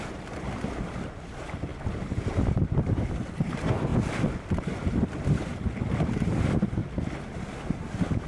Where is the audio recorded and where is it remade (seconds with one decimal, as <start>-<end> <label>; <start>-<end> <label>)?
0.0-3.9 remade; 3.9-5.3 recorded; 5.3-6.8 remade; 6.8-7.6 recorded; 7.6-8.3 remade

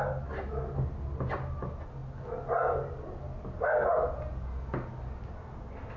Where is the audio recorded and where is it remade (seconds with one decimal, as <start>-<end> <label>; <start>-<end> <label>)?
0.0-6.0 recorded

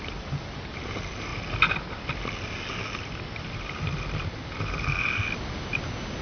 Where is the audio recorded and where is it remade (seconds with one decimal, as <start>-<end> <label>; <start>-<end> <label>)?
0.0-6.2 recorded

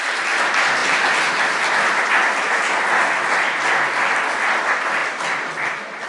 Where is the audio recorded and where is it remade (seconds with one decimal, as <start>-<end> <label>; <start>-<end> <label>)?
0.0-6.1 recorded

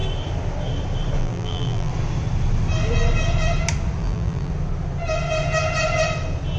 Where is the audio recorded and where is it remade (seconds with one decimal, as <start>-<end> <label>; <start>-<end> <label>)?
0.0-1.2 recorded; 1.2-1.9 remade; 1.9-4.0 recorded; 4.0-4.5 remade; 4.5-6.6 recorded

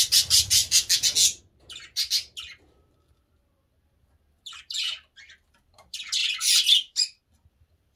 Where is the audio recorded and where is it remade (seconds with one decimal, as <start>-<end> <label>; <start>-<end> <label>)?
0.0-0.6 remade; 0.6-4.6 recorded; 4.6-8.0 remade